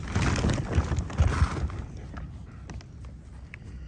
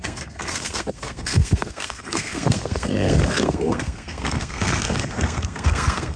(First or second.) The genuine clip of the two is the first